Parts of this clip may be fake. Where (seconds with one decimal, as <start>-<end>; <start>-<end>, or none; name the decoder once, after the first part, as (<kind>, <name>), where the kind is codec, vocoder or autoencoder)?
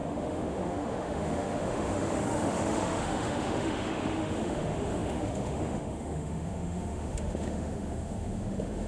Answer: 0.0-8.9 (autoencoder, DAC-VAE)